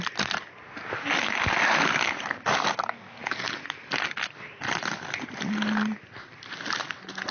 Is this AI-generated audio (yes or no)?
no